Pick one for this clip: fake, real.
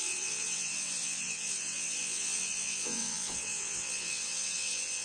fake